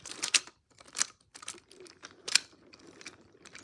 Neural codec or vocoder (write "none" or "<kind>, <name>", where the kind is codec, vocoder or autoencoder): vocoder, BigVGAN v2